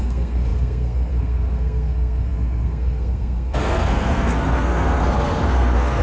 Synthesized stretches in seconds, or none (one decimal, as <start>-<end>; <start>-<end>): 0.0-6.0

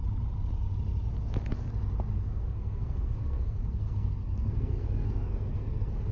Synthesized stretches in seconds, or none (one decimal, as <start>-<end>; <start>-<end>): 2.1-6.1

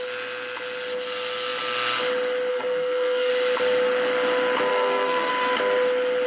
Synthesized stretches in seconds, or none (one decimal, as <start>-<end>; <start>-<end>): 2.5-3.3; 4.7-5.3

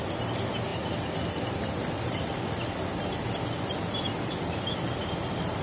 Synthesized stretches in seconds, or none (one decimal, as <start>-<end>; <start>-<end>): none

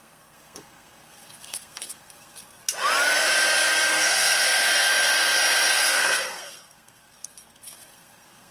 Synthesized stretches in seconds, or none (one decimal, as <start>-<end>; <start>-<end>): 0.0-2.6; 3.9-4.9; 5.7-8.5

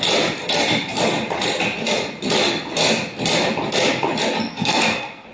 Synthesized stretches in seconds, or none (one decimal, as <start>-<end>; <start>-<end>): 4.5-5.3

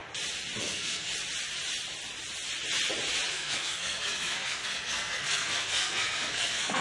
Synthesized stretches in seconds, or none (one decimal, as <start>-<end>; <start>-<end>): 0.6-1.1; 3.3-6.8

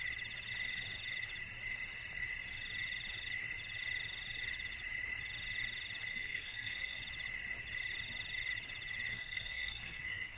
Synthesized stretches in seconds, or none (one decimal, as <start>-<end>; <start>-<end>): 6.1-7.0; 9.1-10.4